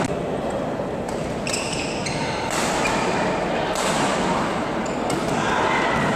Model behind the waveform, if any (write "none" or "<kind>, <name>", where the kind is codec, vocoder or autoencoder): none